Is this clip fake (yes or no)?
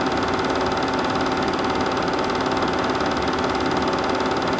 no